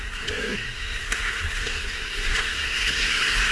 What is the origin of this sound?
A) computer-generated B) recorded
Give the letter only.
A